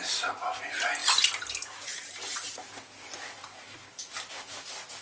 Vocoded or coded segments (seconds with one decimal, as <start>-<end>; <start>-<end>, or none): none